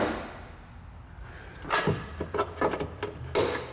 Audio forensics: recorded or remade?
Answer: recorded